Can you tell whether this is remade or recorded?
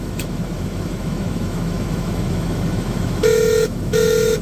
remade